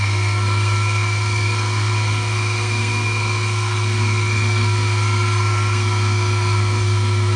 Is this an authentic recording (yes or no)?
no